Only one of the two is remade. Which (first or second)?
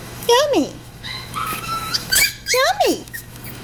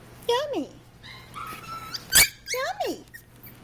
first